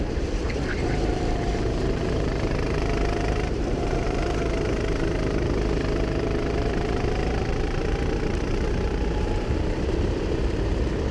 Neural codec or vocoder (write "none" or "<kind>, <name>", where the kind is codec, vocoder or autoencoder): vocoder, BigVGAN v2